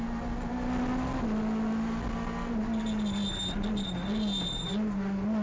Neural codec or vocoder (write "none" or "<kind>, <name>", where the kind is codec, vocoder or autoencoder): none